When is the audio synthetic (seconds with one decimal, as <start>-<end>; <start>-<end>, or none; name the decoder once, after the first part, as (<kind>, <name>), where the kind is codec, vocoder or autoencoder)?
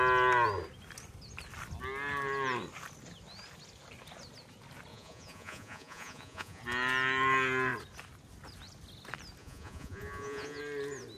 4.9-6.6 (vocoder, Vocos); 9.4-10.6